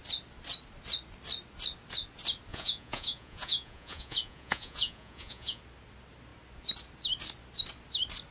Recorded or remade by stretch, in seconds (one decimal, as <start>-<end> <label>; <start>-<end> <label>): 0.0-2.5 recorded; 2.5-5.6 remade; 5.6-8.3 recorded

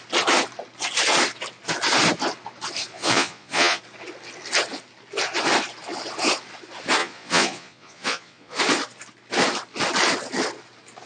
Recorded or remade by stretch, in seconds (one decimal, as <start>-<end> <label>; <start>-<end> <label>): 0.0-2.9 recorded; 2.9-3.8 remade; 3.8-7.0 recorded; 7.0-8.6 remade; 8.6-11.1 recorded

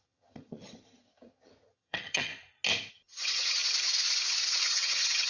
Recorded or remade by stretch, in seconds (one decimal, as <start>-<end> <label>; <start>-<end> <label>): 0.0-2.3 remade; 2.3-2.9 recorded; 2.9-3.6 remade; 3.6-4.6 recorded; 4.6-5.3 remade

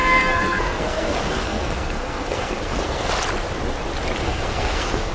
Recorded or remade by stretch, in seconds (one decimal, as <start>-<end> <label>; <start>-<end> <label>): 0.0-3.1 remade; 3.1-4.2 recorded; 4.2-5.1 remade

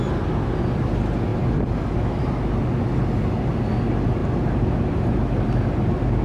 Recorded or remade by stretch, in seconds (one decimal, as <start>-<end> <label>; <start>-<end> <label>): 0.0-1.3 recorded; 1.3-2.2 remade; 2.2-4.2 recorded; 4.2-4.7 remade; 4.7-6.2 recorded

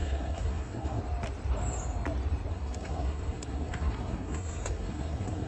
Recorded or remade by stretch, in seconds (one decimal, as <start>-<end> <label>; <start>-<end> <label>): 0.0-1.0 remade; 1.0-2.5 recorded; 2.5-5.5 remade

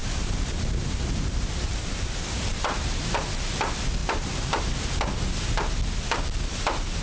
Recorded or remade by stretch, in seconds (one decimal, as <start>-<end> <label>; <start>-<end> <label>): 0.0-3.2 remade; 3.2-4.0 recorded; 4.0-4.6 remade; 4.6-7.0 recorded